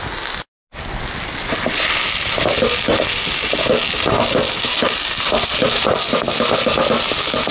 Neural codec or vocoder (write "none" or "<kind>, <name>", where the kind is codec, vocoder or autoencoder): none